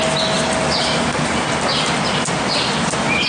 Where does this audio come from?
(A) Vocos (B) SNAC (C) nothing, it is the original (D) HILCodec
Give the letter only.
C